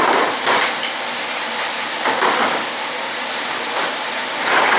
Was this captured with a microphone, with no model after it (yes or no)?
no